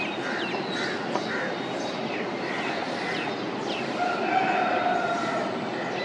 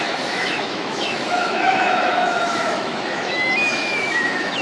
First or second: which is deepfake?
second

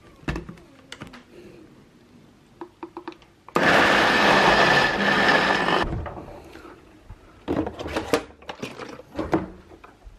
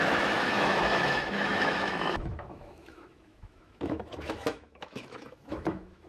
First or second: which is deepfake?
second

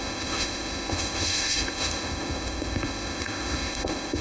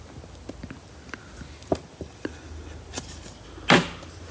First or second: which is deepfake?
first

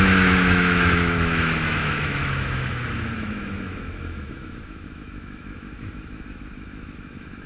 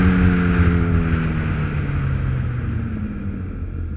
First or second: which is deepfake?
first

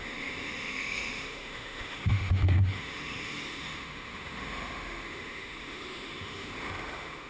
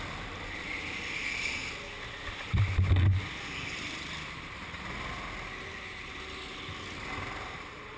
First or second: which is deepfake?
first